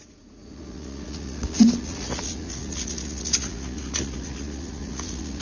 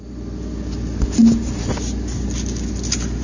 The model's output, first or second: first